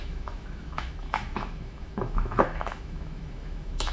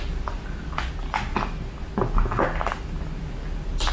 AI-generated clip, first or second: first